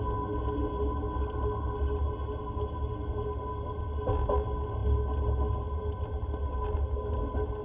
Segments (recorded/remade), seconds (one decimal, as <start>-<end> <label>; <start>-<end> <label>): 0.0-7.6 recorded